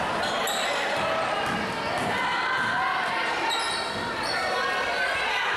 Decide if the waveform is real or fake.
real